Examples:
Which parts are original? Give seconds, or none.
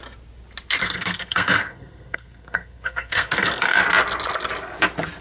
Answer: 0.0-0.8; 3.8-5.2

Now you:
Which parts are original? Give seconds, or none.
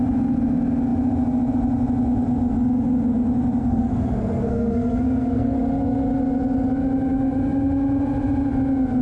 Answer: 0.0-3.6; 5.6-9.0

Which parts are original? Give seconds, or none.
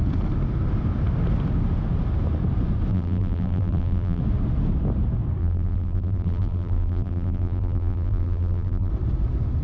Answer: 0.0-2.9; 4.2-5.4; 8.9-9.6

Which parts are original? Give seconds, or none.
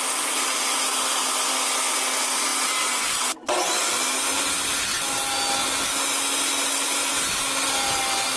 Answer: 0.0-8.4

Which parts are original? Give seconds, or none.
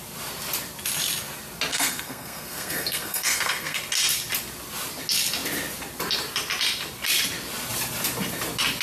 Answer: 0.0-1.7; 3.8-8.8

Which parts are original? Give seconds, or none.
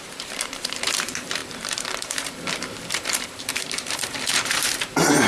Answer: none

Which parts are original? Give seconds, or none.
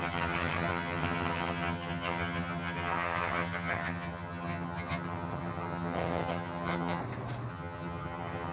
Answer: 7.0-7.5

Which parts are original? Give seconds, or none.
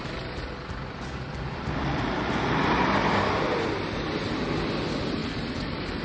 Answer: 0.0-5.2